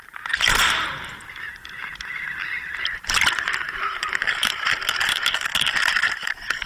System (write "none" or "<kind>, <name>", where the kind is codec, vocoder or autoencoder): vocoder, BigVGAN v2